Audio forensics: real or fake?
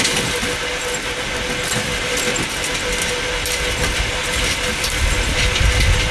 real